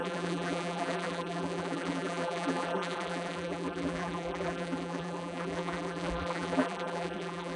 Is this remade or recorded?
remade